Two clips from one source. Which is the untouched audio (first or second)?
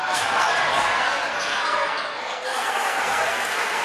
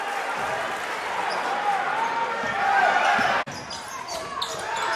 second